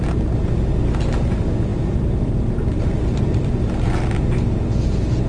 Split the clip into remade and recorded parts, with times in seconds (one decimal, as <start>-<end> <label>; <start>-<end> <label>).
0.0-1.7 recorded; 1.7-2.3 remade; 2.3-5.3 recorded